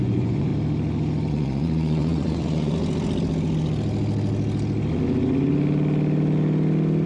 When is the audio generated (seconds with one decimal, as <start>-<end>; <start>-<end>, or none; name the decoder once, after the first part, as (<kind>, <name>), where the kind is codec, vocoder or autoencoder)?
0.0-0.5 (vocoder, Vocos); 1.3-2.8